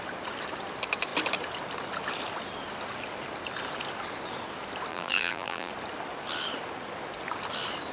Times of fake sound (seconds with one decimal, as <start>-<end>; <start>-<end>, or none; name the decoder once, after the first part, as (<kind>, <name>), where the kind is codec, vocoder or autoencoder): 4.9-5.7 (vocoder, BigVGAN v2)